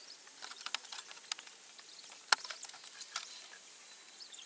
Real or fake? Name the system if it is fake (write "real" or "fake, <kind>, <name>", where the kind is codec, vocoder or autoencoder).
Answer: real